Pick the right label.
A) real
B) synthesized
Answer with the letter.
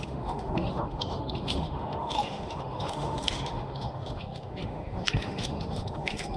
B